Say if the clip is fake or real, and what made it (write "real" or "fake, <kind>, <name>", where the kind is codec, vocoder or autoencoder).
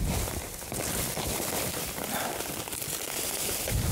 fake, vocoder, BigVGAN v2